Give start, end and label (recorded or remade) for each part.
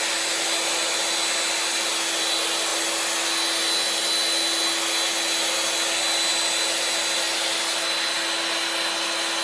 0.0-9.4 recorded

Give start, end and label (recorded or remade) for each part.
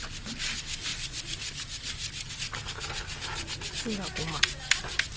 0.0-5.2 recorded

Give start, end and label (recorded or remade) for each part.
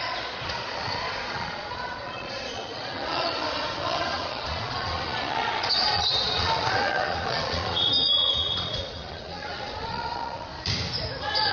0.0-10.5 remade; 10.5-11.5 recorded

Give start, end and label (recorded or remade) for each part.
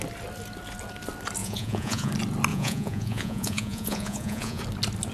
0.0-1.4 recorded; 1.4-2.1 remade; 2.1-2.5 recorded; 2.5-4.6 remade; 4.6-5.1 recorded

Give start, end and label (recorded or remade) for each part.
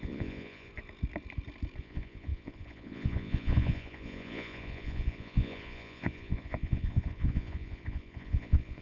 0.0-0.7 remade; 0.7-1.8 recorded; 1.8-8.8 remade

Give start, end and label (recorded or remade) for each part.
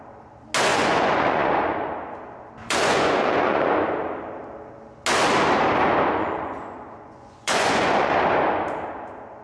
0.0-0.7 recorded; 0.7-1.9 remade; 1.9-2.6 recorded; 2.6-3.7 remade; 3.7-6.2 recorded; 6.2-8.2 remade; 8.2-9.4 recorded